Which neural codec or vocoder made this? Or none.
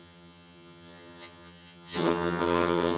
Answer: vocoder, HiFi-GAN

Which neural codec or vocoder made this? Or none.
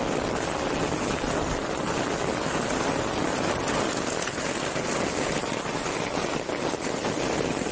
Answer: none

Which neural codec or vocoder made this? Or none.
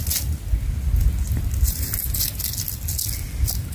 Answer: none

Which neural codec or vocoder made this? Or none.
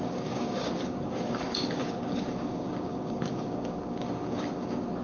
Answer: codec, DAC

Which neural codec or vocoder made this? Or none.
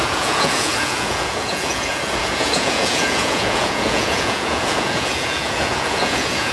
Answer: vocoder, Vocos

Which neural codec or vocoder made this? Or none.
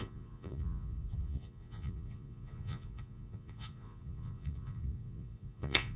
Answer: vocoder, Vocos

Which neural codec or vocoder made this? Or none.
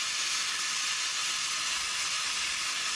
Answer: none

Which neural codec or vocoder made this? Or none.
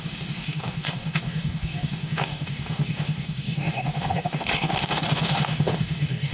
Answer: codec, DAC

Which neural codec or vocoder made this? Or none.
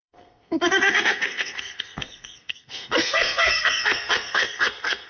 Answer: codec, SNAC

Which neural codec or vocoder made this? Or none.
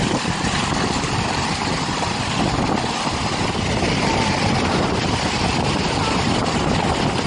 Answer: none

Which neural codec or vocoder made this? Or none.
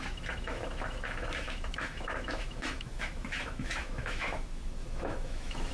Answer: autoencoder, DAC-VAE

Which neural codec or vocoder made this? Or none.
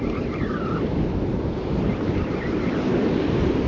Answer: none